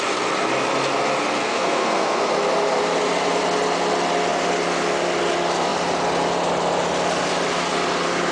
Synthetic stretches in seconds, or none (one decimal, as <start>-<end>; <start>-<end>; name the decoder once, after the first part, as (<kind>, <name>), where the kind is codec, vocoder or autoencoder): 1.4-2.3 (codec, SNAC)